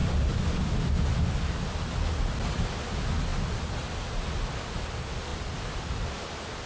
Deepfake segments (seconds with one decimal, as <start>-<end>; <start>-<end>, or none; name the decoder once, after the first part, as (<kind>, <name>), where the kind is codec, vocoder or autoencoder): 0.0-1.6 (vocoder, BigVGAN v2); 3.3-3.9; 5.3-6.1